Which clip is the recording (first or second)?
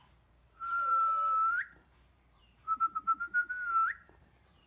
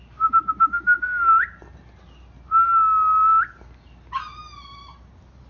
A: second